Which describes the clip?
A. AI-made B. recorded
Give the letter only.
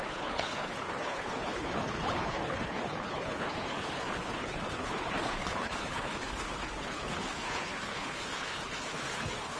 A